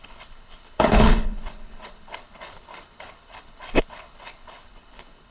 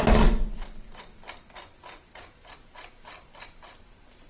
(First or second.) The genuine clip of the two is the second